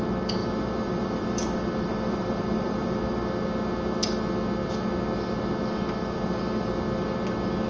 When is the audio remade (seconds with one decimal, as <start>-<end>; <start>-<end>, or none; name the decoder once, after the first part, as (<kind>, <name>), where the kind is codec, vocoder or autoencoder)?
0.4-3.2 (vocoder, BigVGAN v2); 6.0-6.8